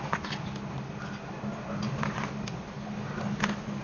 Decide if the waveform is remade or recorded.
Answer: recorded